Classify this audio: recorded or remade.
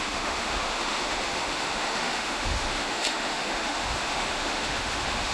remade